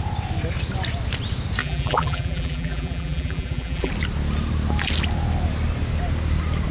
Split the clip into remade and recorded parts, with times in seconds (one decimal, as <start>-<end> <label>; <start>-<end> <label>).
0.0-1.6 recorded; 1.6-3.9 remade; 3.9-6.7 recorded